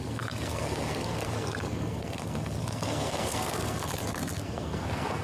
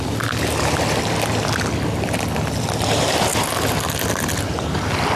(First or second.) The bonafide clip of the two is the second